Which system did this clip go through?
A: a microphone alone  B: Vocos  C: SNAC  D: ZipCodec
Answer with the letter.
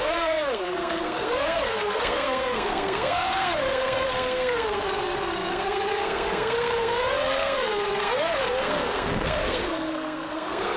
C